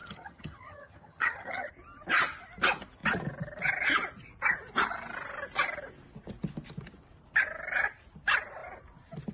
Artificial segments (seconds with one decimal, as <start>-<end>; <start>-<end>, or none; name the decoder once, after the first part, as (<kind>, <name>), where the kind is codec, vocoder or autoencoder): 0.0-1.7 (vocoder, HiFi-GAN)